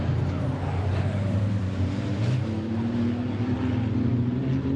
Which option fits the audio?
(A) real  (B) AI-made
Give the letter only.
A